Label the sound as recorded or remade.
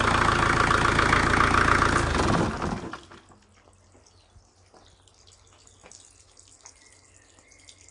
recorded